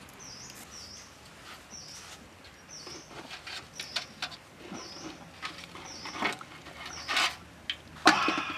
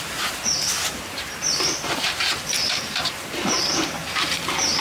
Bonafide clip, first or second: first